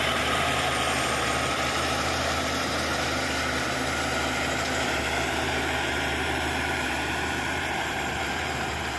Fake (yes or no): yes